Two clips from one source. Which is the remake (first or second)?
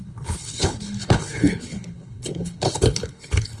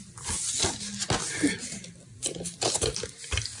first